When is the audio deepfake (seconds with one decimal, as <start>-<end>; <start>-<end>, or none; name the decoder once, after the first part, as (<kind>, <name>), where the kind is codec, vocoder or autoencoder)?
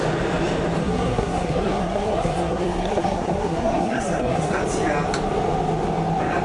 0.8-4.6 (codec, SNAC)